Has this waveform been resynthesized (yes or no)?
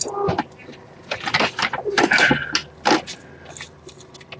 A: no